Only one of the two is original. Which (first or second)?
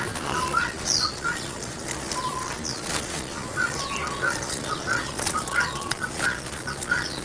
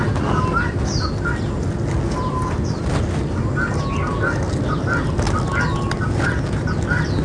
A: second